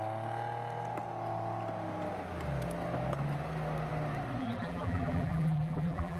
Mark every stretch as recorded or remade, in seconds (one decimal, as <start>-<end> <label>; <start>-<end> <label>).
0.0-4.4 recorded; 4.4-6.2 remade